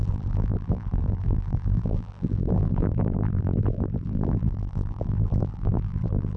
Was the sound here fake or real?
fake